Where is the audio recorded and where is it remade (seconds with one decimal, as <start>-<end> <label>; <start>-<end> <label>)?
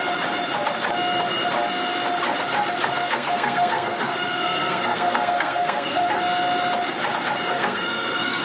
0.0-3.0 recorded; 3.0-6.2 remade; 6.2-7.5 recorded; 7.5-8.4 remade